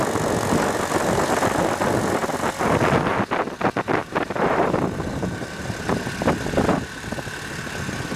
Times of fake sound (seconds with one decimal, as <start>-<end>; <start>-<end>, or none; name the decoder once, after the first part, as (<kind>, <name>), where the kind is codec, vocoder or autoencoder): 4.0-5.6 (vocoder, BigVGAN v2)